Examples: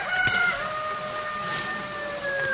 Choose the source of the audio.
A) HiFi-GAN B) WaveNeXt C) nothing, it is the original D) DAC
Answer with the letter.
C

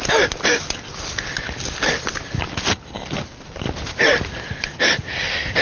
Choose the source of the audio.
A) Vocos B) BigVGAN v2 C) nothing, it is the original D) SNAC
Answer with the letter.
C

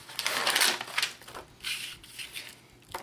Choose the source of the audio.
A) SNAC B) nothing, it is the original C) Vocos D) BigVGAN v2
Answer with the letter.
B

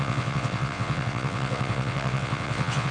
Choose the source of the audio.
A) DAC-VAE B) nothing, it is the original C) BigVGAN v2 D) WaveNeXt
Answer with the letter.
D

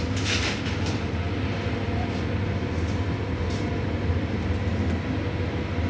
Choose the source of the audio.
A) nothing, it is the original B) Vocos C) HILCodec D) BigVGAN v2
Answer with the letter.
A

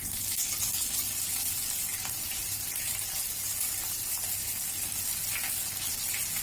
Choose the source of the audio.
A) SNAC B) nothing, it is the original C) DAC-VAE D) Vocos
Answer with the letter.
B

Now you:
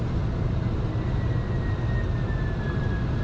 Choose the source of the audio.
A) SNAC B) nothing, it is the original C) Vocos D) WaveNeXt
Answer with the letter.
B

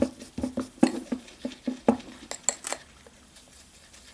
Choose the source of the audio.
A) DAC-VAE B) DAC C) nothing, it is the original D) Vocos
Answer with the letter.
C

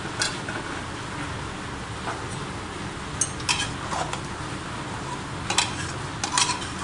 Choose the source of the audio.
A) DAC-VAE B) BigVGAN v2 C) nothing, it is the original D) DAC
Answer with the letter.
C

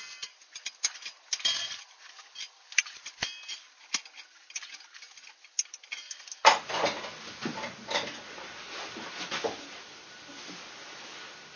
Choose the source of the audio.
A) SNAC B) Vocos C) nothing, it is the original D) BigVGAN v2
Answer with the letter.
C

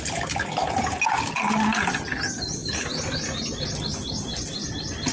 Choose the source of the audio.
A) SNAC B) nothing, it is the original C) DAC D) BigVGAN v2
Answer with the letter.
B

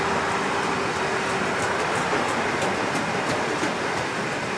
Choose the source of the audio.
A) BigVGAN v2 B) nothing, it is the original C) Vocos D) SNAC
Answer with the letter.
B